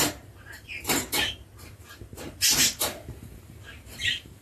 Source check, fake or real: fake